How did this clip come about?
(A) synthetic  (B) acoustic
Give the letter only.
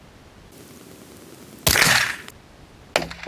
B